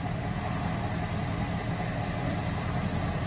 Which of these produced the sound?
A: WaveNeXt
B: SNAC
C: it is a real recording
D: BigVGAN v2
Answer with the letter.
C